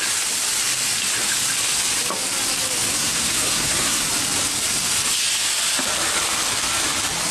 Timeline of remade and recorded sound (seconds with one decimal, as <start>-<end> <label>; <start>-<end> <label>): 0.0-2.9 recorded; 2.9-4.1 remade; 4.1-7.3 recorded